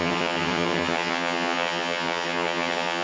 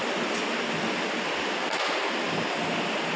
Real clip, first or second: second